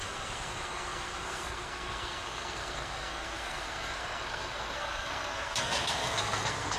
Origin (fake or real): fake